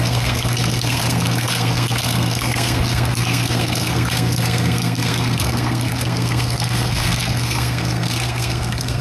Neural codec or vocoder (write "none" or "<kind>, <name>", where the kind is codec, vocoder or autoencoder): codec, SNAC